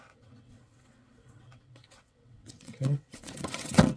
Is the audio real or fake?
fake